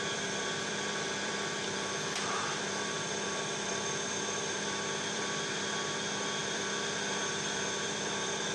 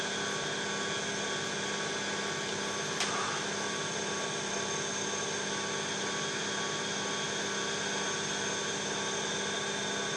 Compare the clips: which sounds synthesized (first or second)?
first